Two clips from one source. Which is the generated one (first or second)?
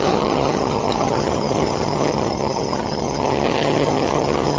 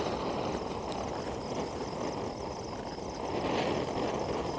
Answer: first